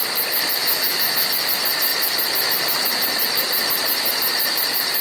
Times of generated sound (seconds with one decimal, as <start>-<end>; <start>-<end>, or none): 0.6-1.3